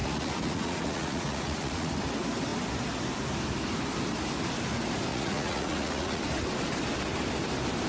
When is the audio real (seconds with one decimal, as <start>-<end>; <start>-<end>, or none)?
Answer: 1.9-5.1; 6.2-7.9